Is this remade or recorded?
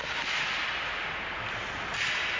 recorded